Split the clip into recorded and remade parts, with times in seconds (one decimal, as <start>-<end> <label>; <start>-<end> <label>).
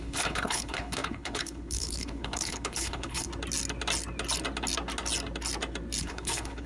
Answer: 0.0-3.3 remade; 3.3-6.0 recorded; 6.0-6.7 remade